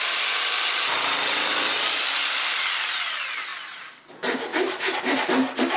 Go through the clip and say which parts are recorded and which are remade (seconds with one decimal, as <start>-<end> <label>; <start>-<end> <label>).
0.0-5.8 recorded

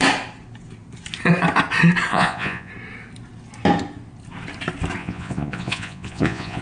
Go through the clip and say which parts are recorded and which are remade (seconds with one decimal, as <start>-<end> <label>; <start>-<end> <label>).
0.0-2.1 recorded; 2.1-2.7 remade; 2.7-5.0 recorded; 5.0-6.6 remade

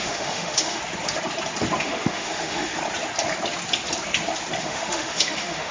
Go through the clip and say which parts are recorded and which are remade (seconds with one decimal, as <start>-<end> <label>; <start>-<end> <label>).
0.0-0.8 remade; 0.8-1.8 recorded; 1.8-2.8 remade; 2.8-4.6 recorded; 4.6-5.7 remade

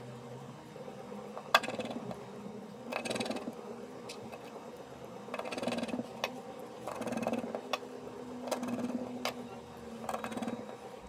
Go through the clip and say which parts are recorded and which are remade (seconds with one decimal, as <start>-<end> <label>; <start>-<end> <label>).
0.0-11.1 recorded